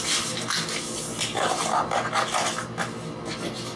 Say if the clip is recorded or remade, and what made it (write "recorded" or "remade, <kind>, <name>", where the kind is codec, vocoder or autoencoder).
recorded